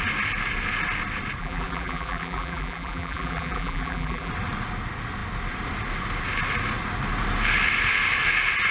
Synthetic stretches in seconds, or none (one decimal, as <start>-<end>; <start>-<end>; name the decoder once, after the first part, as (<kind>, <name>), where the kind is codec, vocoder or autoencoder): 1.4-4.3 (vocoder, BigVGAN v2)